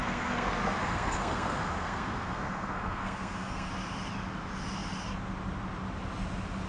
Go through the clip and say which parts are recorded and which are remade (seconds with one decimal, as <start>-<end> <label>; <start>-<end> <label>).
0.0-3.7 remade; 3.7-6.7 recorded